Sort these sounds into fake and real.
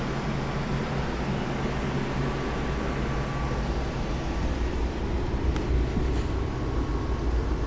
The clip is real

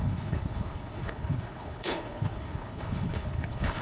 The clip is fake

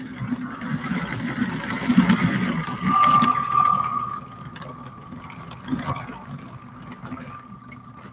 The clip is real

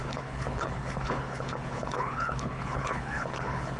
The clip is fake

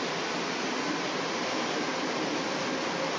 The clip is real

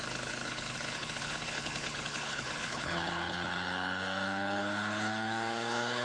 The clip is fake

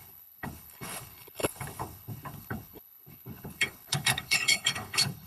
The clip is fake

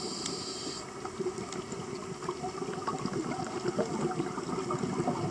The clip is real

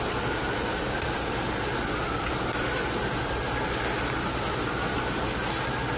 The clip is real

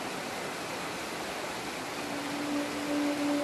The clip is real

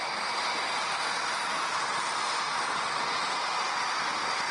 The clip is real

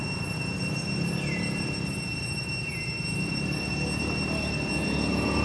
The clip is real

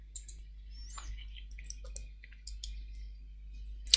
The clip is real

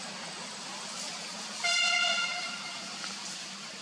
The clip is real